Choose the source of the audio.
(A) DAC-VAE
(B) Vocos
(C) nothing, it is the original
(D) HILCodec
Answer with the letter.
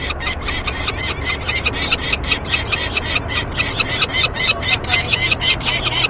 C